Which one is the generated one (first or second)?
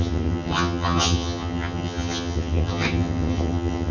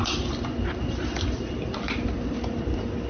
first